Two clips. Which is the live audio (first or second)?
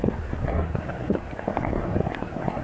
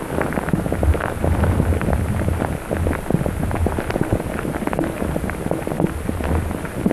second